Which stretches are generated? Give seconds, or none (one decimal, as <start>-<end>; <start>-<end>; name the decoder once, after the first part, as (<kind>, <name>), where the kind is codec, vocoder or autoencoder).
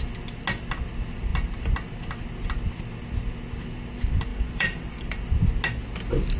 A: 4.3-5.2 (vocoder, BigVGAN v2)